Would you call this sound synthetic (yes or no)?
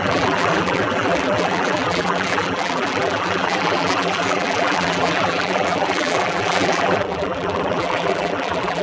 yes